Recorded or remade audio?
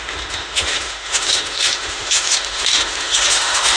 remade